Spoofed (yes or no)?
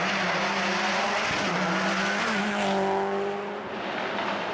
no